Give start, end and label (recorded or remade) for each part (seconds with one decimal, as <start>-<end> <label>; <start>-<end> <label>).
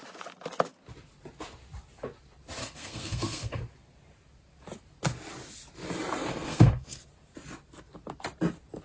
0.0-2.6 recorded; 2.6-3.6 remade; 3.6-6.3 recorded; 6.3-7.0 remade; 7.0-8.8 recorded